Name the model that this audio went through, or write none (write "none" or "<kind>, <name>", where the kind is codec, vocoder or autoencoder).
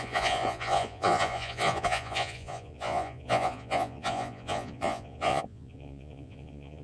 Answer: vocoder, Vocos